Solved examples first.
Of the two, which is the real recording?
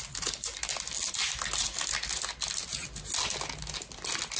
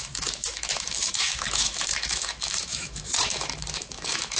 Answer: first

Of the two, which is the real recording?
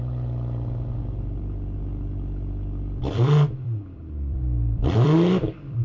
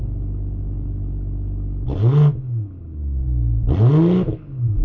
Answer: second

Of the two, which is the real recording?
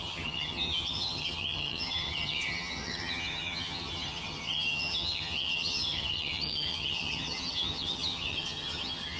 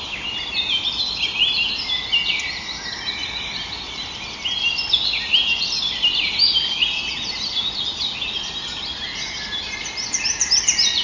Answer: second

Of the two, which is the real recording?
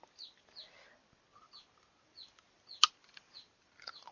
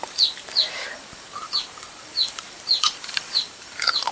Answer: first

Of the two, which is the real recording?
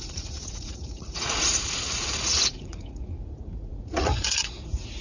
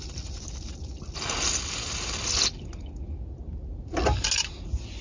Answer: second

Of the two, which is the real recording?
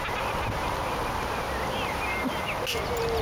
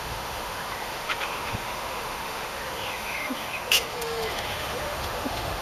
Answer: first